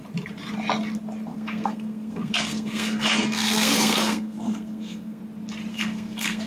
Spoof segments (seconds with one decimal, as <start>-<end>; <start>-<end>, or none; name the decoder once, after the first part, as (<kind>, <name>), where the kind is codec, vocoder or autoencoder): 1.3-5.2 (codec, SNAC); 5.7-6.5